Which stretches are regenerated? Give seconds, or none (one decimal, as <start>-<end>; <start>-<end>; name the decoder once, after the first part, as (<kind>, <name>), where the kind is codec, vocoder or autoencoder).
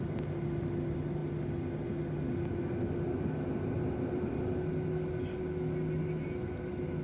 none